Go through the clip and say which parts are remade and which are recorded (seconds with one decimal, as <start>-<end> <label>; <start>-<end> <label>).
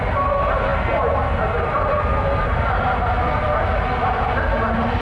0.0-5.0 recorded